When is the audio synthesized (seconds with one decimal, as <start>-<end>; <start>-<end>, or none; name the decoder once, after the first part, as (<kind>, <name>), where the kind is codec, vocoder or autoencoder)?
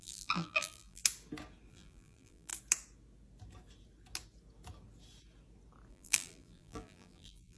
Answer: 0.0-1.0 (vocoder, BigVGAN v2); 1.7-2.5; 5.9-7.6